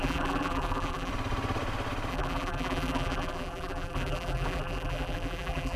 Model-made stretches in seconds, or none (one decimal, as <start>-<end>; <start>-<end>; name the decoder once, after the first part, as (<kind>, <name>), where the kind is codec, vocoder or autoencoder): 0.0-1.1 (vocoder, BigVGAN v2); 2.1-5.8

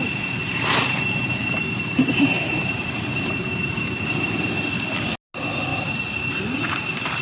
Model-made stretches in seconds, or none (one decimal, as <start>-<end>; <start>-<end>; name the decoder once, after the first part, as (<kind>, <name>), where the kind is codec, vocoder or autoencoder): 0.4-4.5 (vocoder, BigVGAN v2); 5.7-6.3

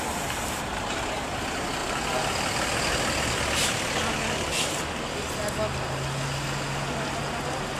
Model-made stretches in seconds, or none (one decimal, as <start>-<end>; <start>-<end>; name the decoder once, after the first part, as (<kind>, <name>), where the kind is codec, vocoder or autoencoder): none

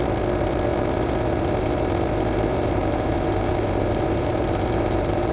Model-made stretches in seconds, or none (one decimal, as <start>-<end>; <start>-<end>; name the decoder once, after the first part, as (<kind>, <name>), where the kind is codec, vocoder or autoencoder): 2.5-5.3 (vocoder, BigVGAN v2)

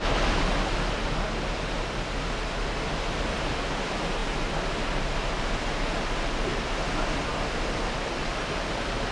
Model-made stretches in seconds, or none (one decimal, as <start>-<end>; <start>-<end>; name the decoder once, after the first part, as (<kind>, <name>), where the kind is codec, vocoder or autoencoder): 6.5-9.1 (vocoder, BigVGAN v2)

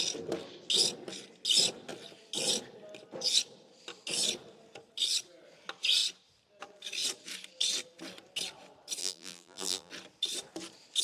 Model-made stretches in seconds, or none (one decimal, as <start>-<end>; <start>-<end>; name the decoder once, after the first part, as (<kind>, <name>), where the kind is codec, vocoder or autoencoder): 9.0-9.9 (vocoder, BigVGAN v2)

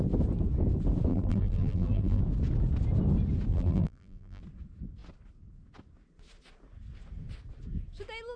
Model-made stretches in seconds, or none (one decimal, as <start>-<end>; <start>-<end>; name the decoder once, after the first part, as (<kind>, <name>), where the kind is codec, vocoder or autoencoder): 1.1-2.2 (vocoder, BigVGAN v2); 3.5-4.4